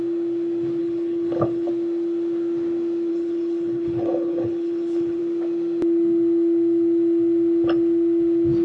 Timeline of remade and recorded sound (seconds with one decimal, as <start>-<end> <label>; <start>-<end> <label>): 0.0-0.8 recorded; 0.8-1.7 remade; 1.7-3.1 recorded; 3.1-5.2 remade; 5.2-8.6 recorded